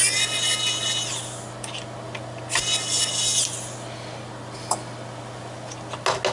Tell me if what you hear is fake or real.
real